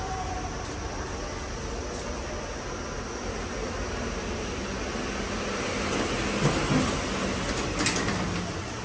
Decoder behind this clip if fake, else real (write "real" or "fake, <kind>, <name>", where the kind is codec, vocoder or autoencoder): real